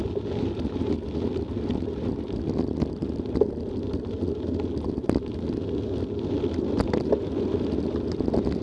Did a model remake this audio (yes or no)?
no